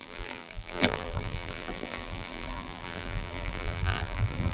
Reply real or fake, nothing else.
fake